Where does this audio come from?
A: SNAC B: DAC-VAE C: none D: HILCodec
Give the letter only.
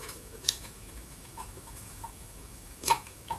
B